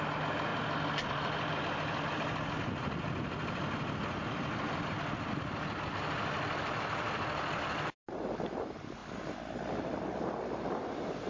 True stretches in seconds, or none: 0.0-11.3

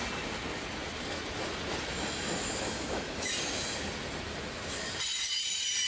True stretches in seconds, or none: 0.0-2.4; 3.3-5.9

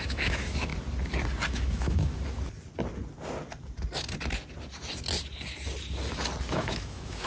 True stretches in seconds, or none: 0.7-1.5; 2.1-6.5

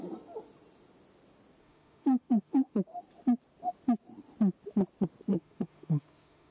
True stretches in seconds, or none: 0.0-1.6; 2.8-5.3